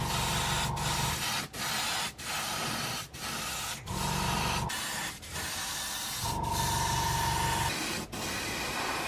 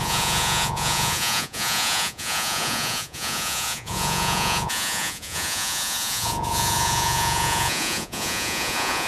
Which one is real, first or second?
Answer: first